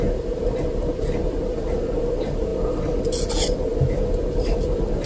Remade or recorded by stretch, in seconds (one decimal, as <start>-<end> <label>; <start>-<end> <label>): 0.0-5.1 recorded